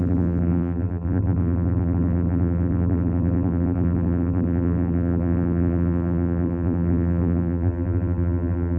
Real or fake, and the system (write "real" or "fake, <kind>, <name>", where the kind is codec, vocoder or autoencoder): fake, vocoder, BigVGAN v2